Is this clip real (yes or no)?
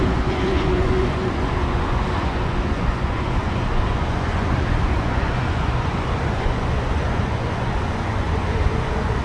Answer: no